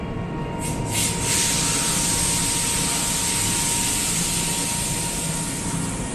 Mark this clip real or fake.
real